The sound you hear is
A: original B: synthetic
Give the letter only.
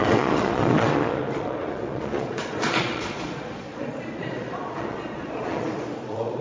B